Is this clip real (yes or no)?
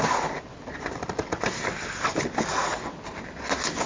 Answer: yes